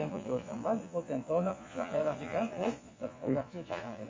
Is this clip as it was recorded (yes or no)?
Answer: no